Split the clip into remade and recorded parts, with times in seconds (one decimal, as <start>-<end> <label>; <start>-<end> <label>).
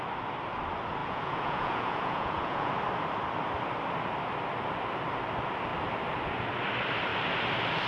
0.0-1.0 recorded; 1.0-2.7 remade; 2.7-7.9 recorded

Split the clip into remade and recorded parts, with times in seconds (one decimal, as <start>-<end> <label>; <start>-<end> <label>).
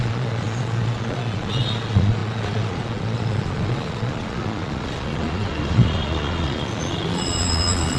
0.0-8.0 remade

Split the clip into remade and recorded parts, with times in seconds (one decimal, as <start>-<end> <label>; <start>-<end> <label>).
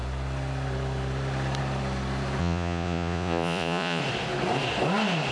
0.0-2.4 recorded; 2.4-4.0 remade; 4.0-5.3 recorded